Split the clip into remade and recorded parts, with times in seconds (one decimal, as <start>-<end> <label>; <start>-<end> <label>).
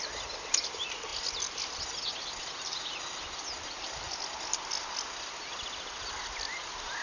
0.0-7.0 recorded